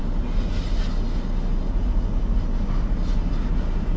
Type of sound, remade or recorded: recorded